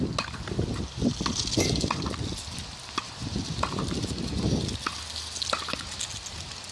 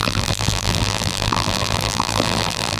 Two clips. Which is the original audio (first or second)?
first